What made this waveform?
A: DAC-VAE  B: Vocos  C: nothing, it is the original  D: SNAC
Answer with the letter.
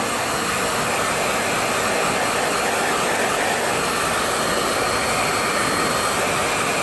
C